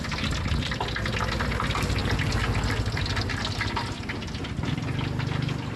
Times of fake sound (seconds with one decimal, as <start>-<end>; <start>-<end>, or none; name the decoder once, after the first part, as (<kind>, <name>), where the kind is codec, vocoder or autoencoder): none